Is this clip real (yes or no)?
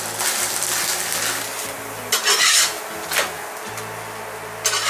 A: yes